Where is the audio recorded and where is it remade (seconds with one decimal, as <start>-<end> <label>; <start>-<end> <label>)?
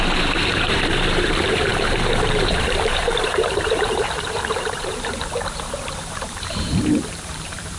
0.0-7.8 remade